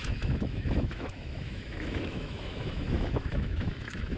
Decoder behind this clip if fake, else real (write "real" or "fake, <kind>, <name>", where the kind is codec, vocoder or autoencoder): fake, autoencoder, DAC-VAE